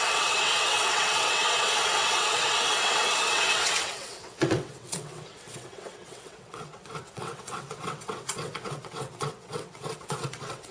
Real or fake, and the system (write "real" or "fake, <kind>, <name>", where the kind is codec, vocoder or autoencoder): fake, vocoder, WaveNeXt